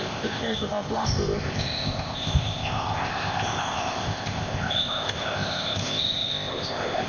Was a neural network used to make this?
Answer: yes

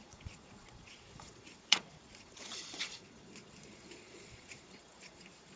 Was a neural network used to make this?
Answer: yes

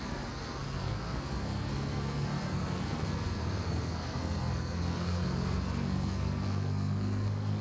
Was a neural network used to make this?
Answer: yes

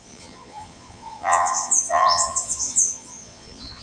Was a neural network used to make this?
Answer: yes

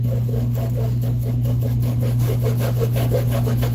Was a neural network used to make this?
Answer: yes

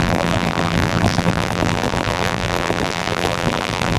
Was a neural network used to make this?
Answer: yes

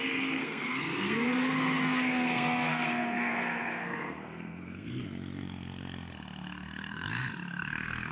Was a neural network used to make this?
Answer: yes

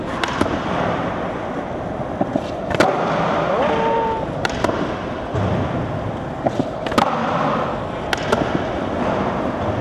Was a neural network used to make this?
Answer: no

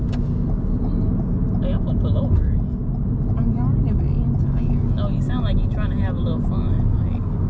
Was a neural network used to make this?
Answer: no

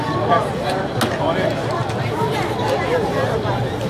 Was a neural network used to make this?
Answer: no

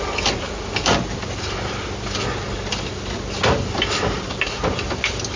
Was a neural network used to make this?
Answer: no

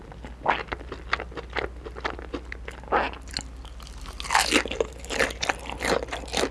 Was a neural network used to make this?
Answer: no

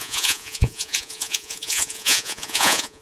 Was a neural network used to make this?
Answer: yes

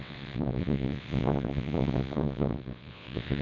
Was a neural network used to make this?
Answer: yes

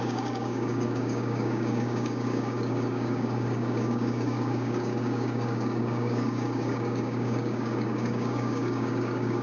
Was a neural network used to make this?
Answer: yes